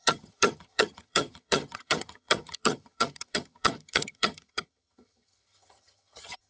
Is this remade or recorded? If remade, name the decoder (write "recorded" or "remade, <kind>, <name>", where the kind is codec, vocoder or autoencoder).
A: remade, vocoder, HiFi-GAN